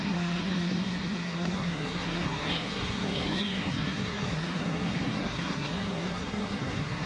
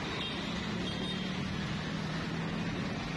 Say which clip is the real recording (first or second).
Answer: second